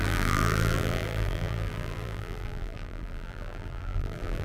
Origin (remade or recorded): remade